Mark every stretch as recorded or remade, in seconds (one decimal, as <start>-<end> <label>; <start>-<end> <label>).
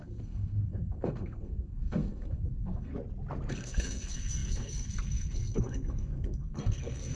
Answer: 0.0-2.9 remade; 2.9-3.5 recorded; 3.5-7.2 remade